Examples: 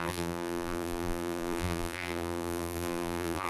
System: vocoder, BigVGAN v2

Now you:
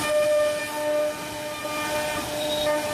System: none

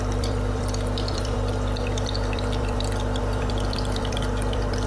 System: vocoder, BigVGAN v2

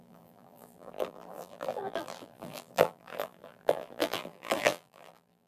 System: vocoder, BigVGAN v2